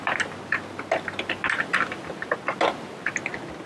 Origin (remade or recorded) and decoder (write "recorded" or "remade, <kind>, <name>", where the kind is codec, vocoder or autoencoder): recorded